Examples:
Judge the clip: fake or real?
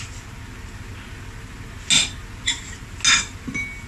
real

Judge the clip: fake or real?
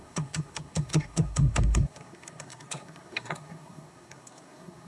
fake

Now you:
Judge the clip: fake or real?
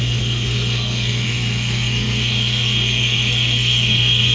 fake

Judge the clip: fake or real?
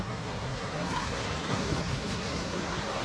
fake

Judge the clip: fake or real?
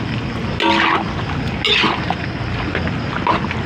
real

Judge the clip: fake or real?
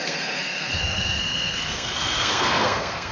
fake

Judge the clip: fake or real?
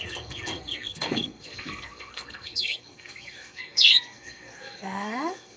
fake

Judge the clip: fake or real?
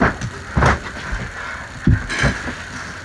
real